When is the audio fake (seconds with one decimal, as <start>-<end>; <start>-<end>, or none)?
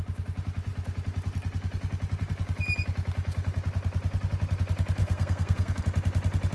5.0-5.8